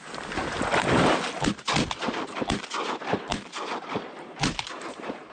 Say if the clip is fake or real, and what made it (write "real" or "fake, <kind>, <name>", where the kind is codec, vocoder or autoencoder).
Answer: real